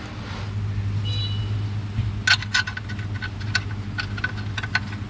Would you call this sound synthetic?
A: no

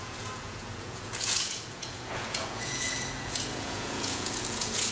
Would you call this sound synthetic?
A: yes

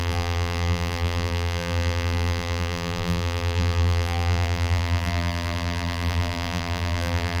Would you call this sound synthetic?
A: yes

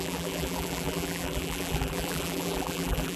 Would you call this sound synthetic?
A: yes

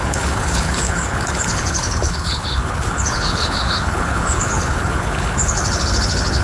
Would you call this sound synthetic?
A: yes